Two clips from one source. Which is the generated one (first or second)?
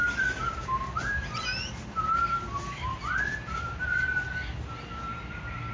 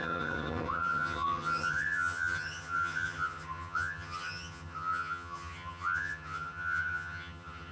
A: second